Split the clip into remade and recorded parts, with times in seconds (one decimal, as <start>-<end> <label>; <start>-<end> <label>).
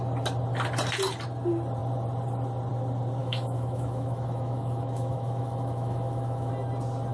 0.0-3.2 recorded; 3.2-6.5 remade; 6.5-7.1 recorded